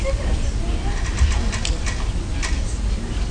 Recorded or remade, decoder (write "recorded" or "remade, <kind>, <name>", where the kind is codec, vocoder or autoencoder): recorded